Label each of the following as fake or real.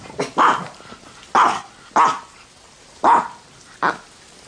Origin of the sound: real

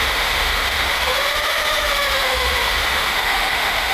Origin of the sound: fake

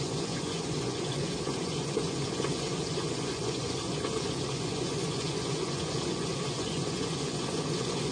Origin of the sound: fake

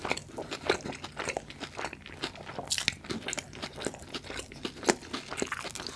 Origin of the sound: real